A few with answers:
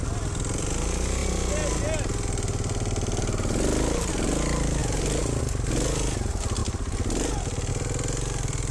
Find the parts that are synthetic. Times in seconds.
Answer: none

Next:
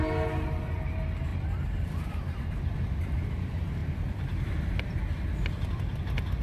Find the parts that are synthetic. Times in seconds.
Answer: 1.3-2.2 (vocoder, BigVGAN v2); 3.8-5.0

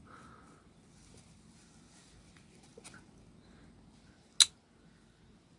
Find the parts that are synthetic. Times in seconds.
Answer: none

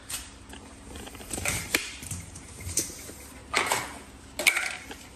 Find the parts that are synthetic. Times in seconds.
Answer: 0.0-3.4 (vocoder, BigVGAN v2); 4.4-5.2

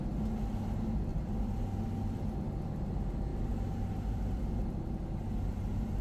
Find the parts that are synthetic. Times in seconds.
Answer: 1.1-1.6 (vocoder, BigVGAN v2); 3.3-4.4

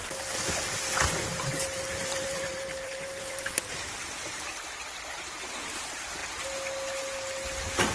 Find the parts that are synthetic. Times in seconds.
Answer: 1.3-3.6 (vocoder, BigVGAN v2)